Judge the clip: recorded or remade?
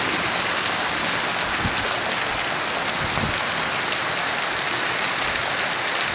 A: recorded